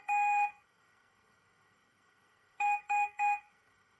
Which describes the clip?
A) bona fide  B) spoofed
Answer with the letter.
B